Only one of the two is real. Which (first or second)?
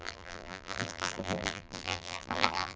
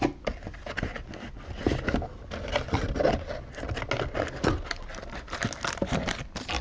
second